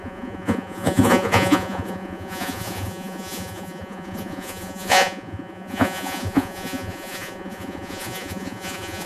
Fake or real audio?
fake